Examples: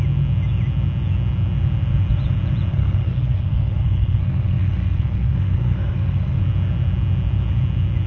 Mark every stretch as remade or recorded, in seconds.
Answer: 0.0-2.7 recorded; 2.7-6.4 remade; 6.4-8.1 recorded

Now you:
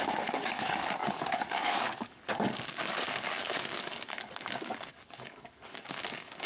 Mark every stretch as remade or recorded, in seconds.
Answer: 0.0-6.5 remade